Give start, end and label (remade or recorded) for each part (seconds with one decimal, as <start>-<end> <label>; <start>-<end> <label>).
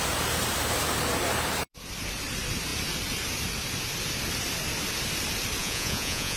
0.0-5.6 recorded; 5.6-6.4 remade